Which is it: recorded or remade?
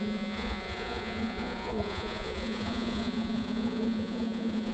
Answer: remade